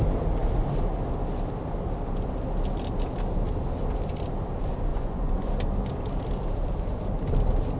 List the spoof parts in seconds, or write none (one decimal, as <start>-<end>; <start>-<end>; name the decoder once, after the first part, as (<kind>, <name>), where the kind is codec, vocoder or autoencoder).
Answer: 4.9-5.5 (vocoder, Vocos)